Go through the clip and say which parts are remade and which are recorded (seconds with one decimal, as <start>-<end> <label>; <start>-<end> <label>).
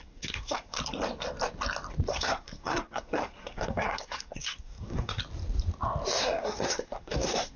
0.0-0.8 remade; 0.8-2.1 recorded; 2.1-5.2 remade; 5.2-6.2 recorded; 6.2-7.6 remade